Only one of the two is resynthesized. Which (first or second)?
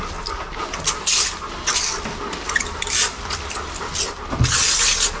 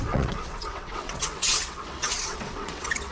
second